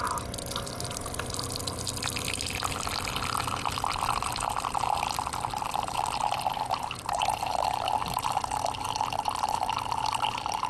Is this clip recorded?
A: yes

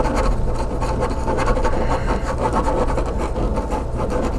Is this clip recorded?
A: yes